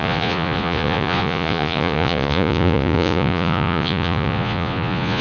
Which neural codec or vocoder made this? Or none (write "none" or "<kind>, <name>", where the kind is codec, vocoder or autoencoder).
vocoder, Vocos